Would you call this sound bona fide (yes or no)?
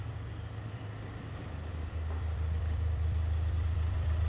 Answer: no